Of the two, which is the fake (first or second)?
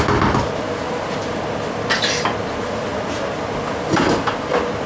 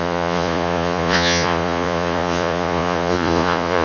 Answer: second